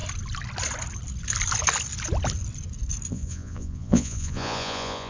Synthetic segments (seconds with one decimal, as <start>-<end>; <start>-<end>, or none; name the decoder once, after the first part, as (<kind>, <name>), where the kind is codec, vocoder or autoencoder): 3.1-5.1 (vocoder, Vocos)